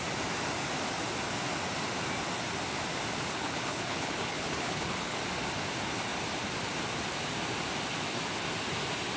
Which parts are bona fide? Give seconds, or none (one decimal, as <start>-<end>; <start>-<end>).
0.0-3.3; 5.2-9.2